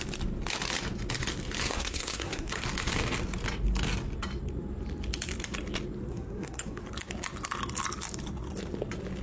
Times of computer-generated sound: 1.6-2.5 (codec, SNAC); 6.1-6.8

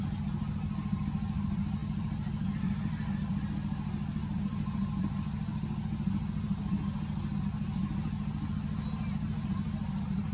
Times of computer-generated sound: none